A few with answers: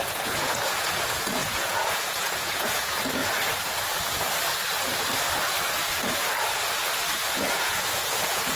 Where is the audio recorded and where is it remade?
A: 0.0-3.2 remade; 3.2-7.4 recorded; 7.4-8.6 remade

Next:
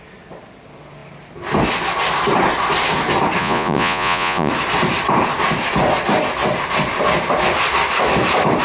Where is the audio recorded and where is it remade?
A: 0.0-3.4 recorded; 3.4-4.5 remade; 4.5-8.6 recorded

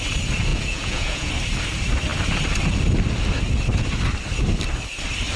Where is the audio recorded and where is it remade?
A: 0.0-0.5 recorded; 0.5-1.3 remade; 1.3-5.4 recorded